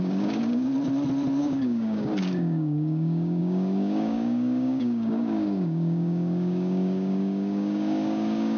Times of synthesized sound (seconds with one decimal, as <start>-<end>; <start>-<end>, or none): 0.0-0.7; 1.4-8.6